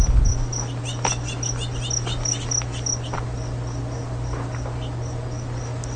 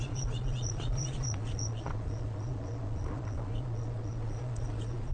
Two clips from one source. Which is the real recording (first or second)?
first